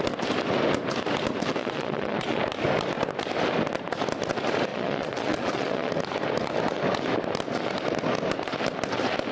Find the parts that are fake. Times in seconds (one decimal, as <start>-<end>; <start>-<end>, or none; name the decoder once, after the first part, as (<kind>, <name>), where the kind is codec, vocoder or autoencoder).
1.6-2.4 (vocoder, Vocos); 4.7-5.9